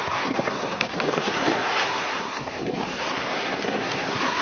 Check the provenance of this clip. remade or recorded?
remade